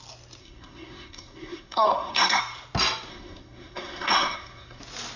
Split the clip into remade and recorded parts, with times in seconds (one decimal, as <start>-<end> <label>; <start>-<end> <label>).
0.0-0.4 recorded; 0.4-2.4 remade; 2.4-3.1 recorded; 3.1-4.8 remade; 4.8-5.2 recorded

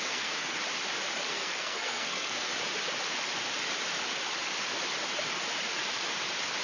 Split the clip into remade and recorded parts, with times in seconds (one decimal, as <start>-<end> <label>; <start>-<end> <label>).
0.0-0.6 remade; 0.6-1.3 recorded; 1.3-2.5 remade; 2.5-6.6 recorded

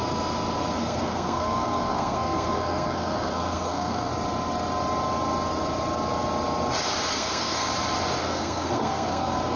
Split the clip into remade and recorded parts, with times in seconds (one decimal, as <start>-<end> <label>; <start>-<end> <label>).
0.0-0.8 recorded; 0.8-4.1 remade; 4.1-7.1 recorded; 7.1-7.7 remade; 7.7-8.2 recorded; 8.2-9.6 remade

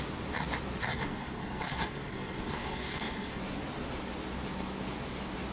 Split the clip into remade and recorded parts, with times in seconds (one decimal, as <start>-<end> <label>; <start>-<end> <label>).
0.0-0.9 recorded; 0.9-3.4 remade; 3.4-5.5 recorded

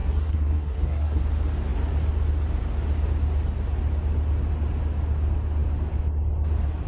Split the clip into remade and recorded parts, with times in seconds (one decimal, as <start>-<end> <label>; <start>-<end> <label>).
0.0-1.2 remade; 1.2-6.9 recorded

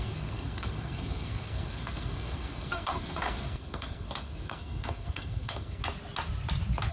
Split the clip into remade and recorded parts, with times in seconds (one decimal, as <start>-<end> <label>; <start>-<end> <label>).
0.0-5.8 remade; 5.8-6.9 recorded